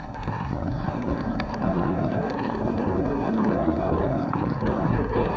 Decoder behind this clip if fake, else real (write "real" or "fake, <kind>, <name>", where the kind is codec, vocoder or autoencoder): fake, codec, SNAC